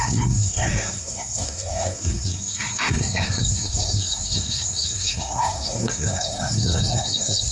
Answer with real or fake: fake